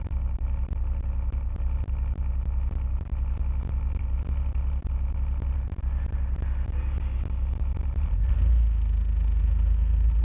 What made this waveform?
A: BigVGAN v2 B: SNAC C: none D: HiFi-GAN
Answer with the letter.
C